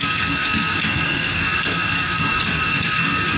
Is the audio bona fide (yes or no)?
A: no